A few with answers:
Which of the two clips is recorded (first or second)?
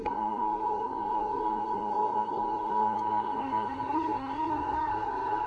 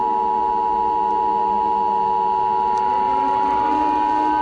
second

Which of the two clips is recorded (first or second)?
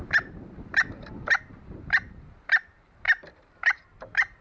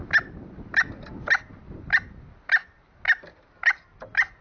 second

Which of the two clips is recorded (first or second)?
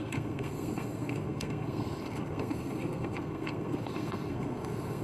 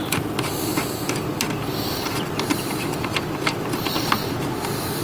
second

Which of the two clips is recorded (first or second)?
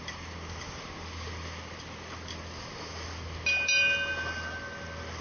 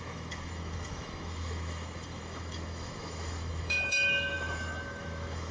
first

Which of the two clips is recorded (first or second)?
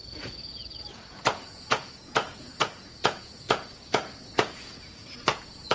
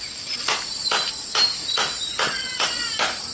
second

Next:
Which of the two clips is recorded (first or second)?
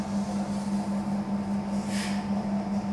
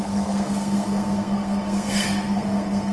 first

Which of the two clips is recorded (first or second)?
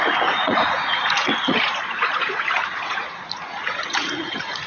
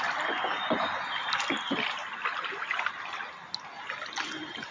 second